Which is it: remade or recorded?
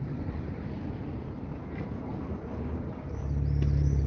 recorded